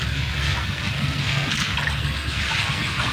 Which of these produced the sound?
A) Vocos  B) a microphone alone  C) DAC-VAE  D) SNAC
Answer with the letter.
D